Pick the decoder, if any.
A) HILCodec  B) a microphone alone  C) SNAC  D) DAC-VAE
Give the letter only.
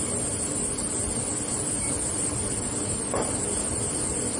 B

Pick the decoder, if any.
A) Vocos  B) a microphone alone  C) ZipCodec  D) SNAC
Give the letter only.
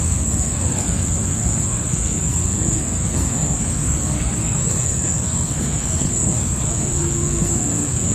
D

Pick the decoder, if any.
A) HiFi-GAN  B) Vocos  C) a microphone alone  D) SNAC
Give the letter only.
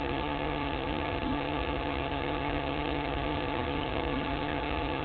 A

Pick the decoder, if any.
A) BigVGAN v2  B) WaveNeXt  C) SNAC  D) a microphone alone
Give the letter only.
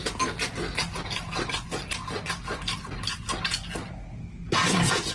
D